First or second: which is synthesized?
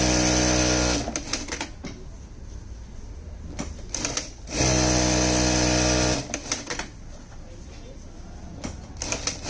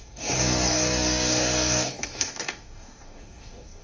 second